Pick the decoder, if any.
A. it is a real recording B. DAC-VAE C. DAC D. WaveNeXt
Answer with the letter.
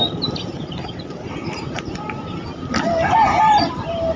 A